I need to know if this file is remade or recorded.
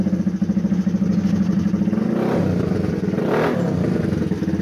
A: recorded